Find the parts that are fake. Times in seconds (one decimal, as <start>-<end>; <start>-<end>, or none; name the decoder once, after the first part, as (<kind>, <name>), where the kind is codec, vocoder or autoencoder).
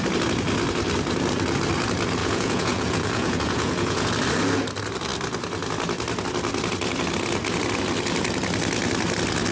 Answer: 2.2-4.1 (vocoder, Vocos)